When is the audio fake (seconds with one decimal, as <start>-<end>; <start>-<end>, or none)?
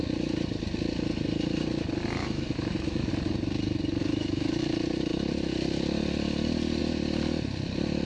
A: 2.2-3.1; 4.0-4.6